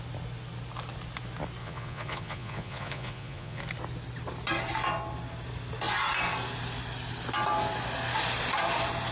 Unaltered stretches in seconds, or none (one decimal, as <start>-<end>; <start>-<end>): 0.0-1.6; 3.6-9.1